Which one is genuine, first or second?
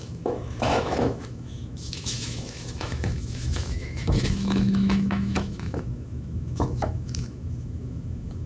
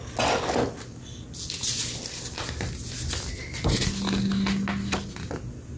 second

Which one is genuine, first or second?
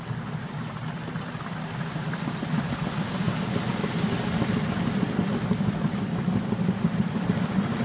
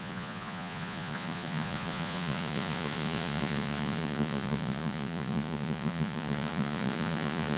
first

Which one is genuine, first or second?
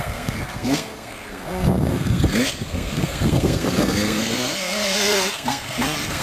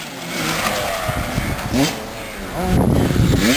second